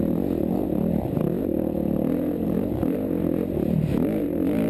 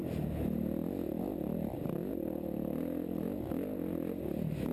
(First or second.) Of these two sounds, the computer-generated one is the first